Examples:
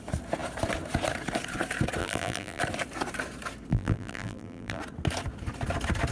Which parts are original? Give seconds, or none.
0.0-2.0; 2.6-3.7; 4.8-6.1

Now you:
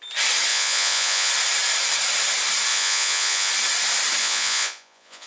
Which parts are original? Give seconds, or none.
0.0-0.5; 1.3-2.7; 3.5-4.2

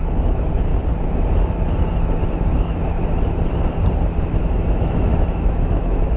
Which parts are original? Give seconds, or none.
0.7-4.4